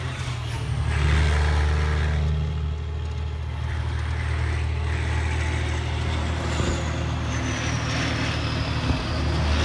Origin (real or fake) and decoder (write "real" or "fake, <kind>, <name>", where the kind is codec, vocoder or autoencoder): real